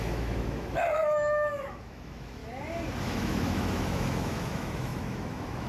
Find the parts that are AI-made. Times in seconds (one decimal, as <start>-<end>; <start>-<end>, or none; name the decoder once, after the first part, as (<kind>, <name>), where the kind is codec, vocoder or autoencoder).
0.0-2.4 (autoencoder, DAC-VAE); 3.0-5.7